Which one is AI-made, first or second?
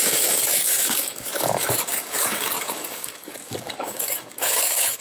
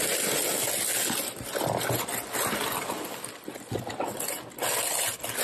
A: first